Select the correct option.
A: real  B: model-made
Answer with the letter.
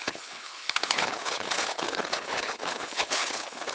B